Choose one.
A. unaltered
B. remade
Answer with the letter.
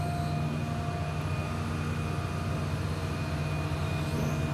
A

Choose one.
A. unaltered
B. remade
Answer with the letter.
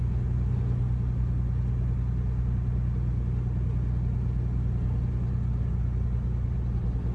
A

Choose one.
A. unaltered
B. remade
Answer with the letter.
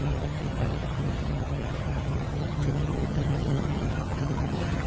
B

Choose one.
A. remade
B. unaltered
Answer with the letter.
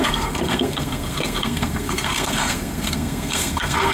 A